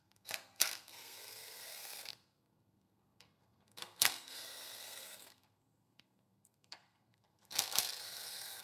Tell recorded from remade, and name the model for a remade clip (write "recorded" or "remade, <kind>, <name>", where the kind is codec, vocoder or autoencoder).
remade, codec, SNAC